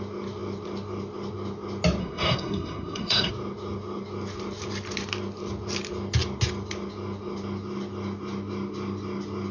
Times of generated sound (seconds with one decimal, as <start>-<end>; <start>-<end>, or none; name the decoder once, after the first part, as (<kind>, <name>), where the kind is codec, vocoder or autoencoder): 2.0-3.3 (codec, SNAC)